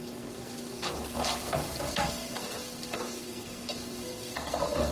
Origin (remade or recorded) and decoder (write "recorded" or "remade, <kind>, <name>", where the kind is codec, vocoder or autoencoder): remade, codec, SNAC